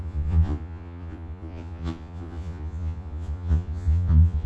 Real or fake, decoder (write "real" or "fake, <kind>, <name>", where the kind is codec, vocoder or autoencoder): fake, vocoder, Vocos